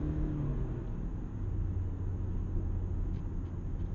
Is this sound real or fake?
real